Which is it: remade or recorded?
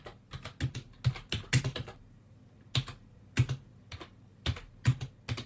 recorded